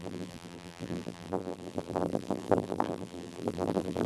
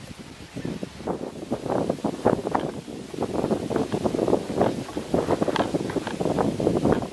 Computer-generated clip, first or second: first